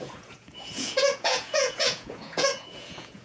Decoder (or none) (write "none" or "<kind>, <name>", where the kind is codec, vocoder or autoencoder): vocoder, Vocos